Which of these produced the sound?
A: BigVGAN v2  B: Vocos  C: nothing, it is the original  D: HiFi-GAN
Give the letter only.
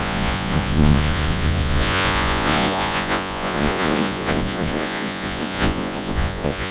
B